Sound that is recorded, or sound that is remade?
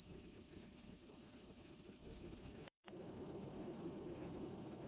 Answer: remade